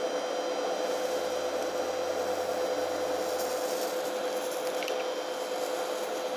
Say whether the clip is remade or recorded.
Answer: recorded